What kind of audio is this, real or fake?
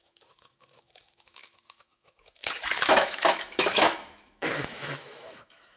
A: fake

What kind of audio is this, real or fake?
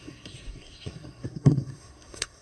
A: fake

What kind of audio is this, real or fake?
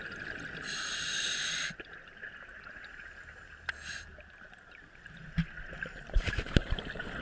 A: real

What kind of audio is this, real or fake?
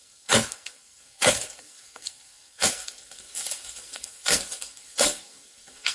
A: fake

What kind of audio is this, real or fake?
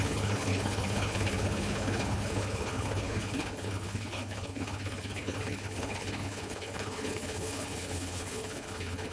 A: fake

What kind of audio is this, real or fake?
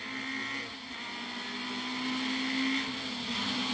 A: real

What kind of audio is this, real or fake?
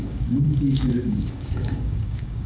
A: fake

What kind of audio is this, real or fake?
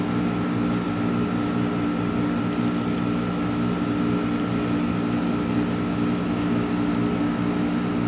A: real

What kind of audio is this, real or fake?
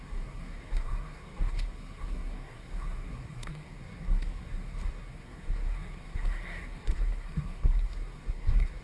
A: fake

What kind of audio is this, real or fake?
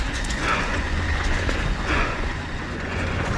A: fake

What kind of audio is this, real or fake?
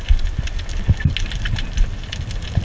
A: real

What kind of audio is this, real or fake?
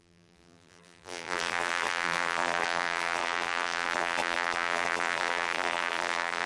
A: fake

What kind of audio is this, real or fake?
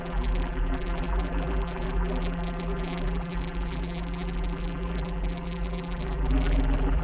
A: fake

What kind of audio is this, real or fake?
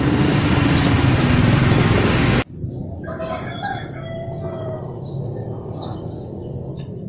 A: real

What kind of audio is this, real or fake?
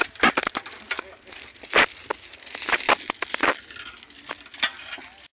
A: real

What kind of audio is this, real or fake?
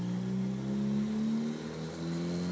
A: real